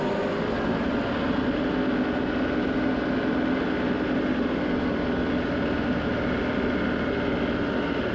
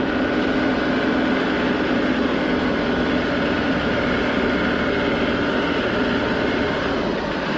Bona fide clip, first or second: first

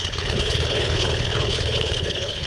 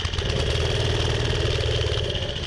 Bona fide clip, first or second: second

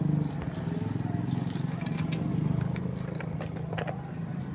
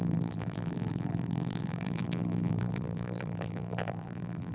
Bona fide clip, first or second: first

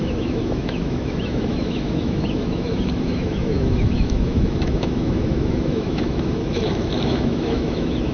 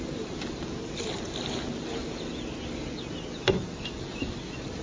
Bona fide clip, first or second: second